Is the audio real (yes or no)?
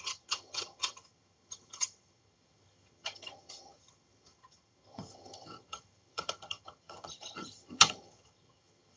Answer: no